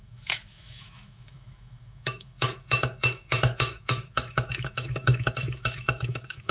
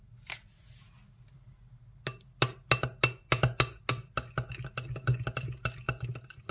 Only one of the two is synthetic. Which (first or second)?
first